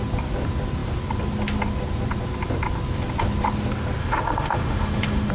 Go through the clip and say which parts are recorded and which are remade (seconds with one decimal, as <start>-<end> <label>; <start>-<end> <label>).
0.0-4.0 recorded; 4.0-5.3 remade

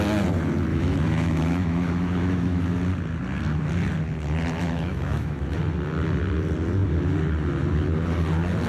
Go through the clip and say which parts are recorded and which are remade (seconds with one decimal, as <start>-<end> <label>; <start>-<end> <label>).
0.0-0.7 recorded; 0.7-2.6 remade; 2.6-4.6 recorded; 4.6-5.6 remade; 5.6-8.7 recorded

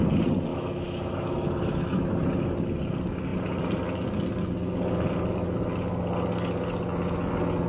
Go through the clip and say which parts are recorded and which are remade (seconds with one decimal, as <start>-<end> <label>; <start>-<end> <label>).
0.0-0.5 recorded; 0.5-2.3 remade; 2.3-7.7 recorded

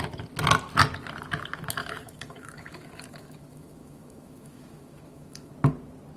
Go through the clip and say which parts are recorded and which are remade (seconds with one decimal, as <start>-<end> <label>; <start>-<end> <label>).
0.0-1.8 recorded; 1.8-5.5 remade; 5.5-6.2 recorded

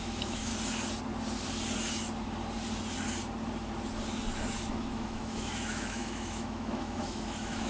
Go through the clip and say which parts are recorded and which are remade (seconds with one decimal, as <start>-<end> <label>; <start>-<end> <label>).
0.0-0.5 remade; 0.5-4.7 recorded; 4.7-7.7 remade

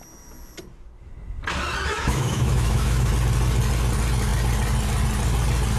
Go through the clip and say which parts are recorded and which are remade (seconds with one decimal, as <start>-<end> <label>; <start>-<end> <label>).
0.0-1.9 recorded; 1.9-3.1 remade; 3.1-5.8 recorded

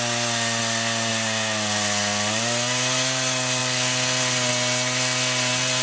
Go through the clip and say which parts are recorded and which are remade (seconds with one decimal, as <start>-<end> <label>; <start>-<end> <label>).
0.0-5.8 recorded